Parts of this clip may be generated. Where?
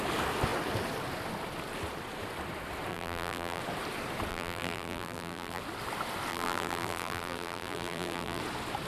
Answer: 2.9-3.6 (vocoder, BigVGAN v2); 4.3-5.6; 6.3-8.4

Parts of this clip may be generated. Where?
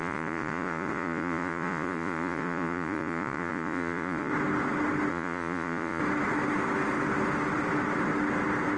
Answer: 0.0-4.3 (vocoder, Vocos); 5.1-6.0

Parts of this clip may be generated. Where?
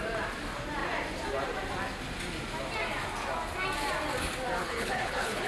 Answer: 4.6-5.5 (codec, HILCodec)